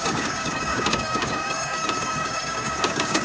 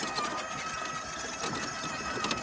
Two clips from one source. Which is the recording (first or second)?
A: second